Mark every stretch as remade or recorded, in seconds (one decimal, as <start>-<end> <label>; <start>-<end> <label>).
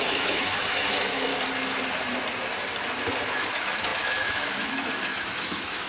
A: 0.0-1.3 remade; 1.3-3.3 recorded; 3.3-5.9 remade